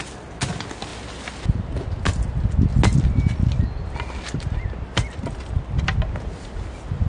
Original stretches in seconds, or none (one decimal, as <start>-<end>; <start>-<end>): 0.0-7.1